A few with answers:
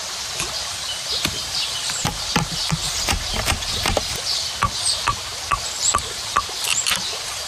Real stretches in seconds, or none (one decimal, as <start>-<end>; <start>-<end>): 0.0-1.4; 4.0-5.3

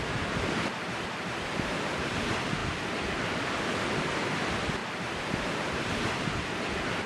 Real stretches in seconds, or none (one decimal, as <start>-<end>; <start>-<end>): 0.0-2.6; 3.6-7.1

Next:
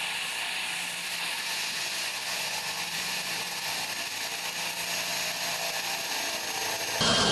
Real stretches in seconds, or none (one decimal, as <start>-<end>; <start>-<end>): 0.0-1.4; 3.7-7.3

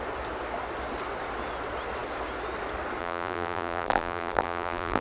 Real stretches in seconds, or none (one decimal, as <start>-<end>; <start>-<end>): 0.0-3.0

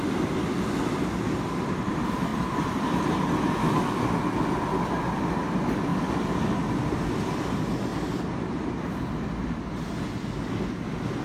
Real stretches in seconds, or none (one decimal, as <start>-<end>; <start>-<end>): 0.0-2.3; 3.6-5.9; 7.5-11.2